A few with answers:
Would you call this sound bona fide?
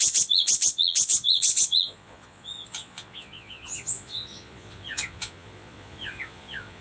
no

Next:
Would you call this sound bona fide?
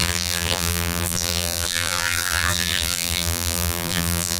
no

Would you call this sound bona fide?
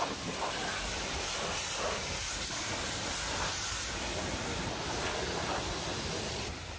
no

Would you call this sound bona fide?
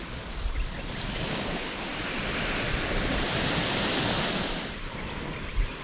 yes